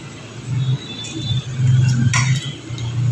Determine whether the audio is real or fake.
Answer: real